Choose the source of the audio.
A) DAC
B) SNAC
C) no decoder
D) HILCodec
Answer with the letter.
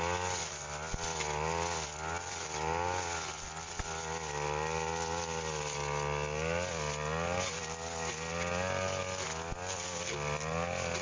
C